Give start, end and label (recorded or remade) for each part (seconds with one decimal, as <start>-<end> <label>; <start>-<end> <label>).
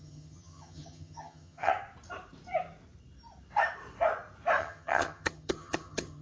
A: 0.0-1.7 remade; 1.7-4.6 recorded; 4.6-6.2 remade